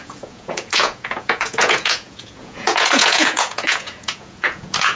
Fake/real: fake